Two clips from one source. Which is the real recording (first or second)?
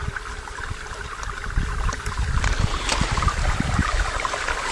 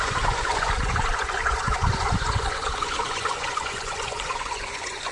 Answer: first